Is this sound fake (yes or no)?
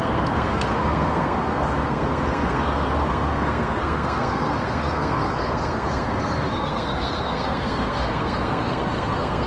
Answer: yes